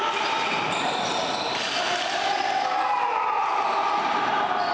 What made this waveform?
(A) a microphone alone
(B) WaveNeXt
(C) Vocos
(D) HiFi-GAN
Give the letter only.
A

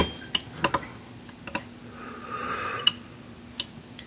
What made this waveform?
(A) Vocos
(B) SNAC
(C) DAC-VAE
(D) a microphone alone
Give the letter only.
D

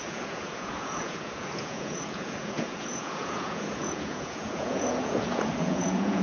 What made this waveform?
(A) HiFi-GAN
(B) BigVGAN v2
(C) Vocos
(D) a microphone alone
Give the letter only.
C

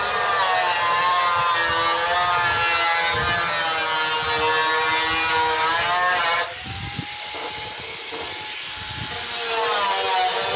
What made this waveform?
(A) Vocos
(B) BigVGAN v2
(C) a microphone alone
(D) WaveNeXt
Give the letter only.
C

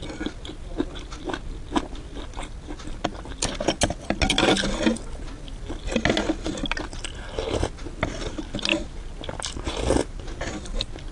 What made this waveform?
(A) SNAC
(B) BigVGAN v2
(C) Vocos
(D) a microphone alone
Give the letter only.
D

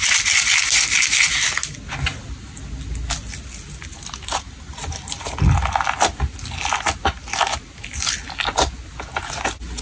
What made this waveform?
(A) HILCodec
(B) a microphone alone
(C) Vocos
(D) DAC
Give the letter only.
B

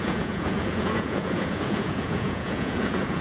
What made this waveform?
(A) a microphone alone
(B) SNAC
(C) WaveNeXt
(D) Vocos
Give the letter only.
D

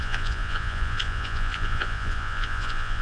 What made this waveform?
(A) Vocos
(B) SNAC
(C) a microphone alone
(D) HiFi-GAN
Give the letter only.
A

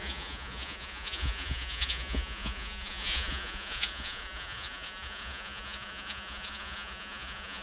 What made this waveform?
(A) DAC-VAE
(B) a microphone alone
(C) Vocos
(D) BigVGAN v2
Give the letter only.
C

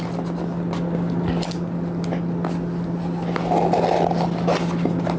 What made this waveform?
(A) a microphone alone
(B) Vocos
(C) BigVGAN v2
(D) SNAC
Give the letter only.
A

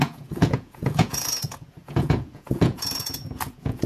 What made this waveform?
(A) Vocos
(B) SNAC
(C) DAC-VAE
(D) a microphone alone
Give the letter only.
A